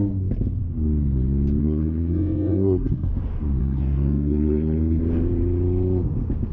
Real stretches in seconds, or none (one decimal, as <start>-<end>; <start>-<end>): 0.0-1.6; 3.1-3.6; 5.0-6.5